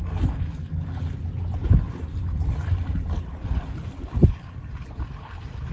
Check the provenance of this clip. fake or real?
real